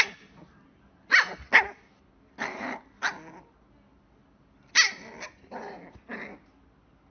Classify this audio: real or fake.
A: real